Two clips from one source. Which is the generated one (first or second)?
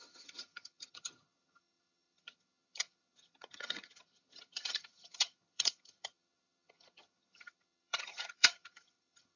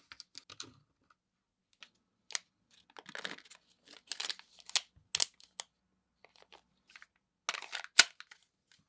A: first